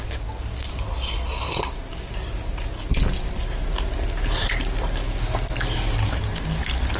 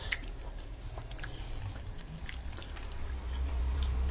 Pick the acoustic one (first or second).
first